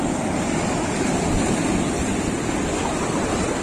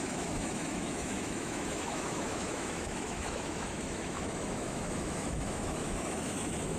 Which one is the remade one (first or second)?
second